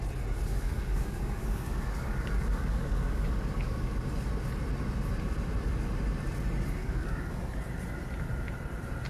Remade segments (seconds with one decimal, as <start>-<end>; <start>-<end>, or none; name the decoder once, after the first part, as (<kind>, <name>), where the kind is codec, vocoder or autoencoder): 0.5-4.0 (codec, DAC); 6.8-7.3